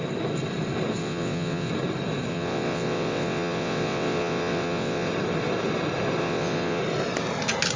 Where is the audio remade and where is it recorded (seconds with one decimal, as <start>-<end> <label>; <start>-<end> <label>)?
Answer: 0.0-1.0 recorded; 1.0-1.7 remade; 1.7-2.3 recorded; 2.3-5.1 remade; 5.1-6.2 recorded; 6.2-6.8 remade; 6.8-7.8 recorded